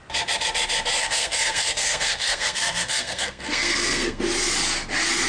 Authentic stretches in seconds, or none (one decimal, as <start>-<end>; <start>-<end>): 0.0-1.0; 4.2-5.3